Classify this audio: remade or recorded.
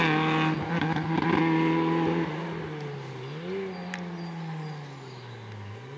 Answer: recorded